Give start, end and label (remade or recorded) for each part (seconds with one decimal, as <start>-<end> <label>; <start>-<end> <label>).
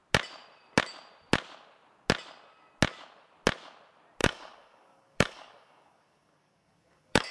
0.0-4.2 recorded; 4.2-7.3 remade